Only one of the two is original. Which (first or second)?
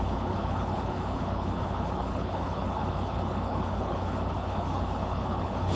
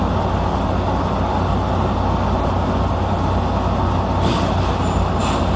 second